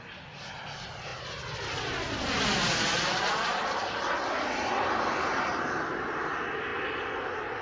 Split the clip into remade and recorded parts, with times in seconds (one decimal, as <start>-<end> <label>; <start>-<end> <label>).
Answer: 0.0-7.6 recorded

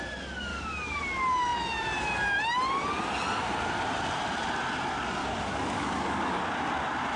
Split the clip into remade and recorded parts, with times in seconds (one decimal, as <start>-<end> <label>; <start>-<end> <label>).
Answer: 0.0-0.5 recorded; 0.5-1.0 remade; 1.0-5.2 recorded; 5.2-6.4 remade; 6.4-7.2 recorded

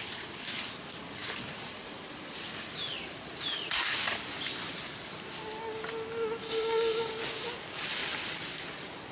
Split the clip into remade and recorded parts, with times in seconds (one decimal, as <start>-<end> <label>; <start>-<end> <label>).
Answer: 0.0-6.4 recorded; 6.4-7.1 remade; 7.1-9.1 recorded

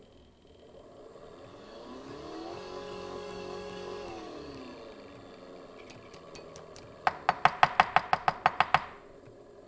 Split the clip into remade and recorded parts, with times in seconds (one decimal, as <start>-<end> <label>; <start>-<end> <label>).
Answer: 0.0-1.5 recorded; 1.5-4.6 remade; 4.6-9.7 recorded

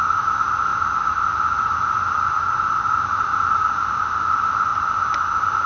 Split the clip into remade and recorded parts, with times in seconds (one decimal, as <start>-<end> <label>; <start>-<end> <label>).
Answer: 0.0-5.7 recorded

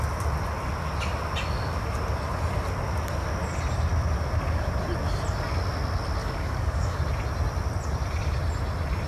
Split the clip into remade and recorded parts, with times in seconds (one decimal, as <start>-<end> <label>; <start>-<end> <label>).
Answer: 0.0-6.2 recorded; 6.2-7.0 remade; 7.0-9.1 recorded